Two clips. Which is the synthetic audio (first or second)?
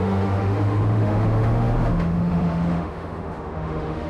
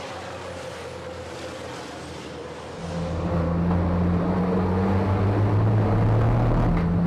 first